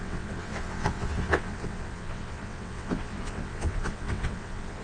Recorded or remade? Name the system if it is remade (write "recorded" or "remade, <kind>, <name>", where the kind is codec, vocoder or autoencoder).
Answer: remade, vocoder, WaveNeXt